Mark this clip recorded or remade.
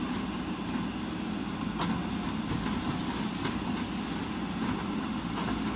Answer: recorded